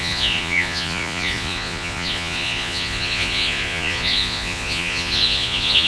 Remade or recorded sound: remade